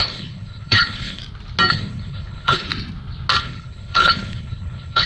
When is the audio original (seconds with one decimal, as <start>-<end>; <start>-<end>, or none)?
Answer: 1.2-1.7; 2.7-3.4